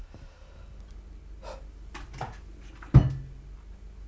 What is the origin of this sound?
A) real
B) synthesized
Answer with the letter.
A